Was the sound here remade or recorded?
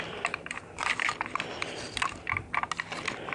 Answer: recorded